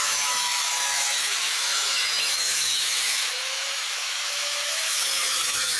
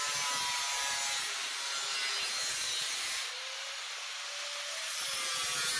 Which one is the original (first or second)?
second